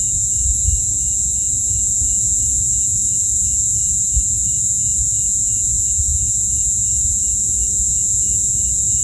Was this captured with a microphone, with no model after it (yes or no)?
yes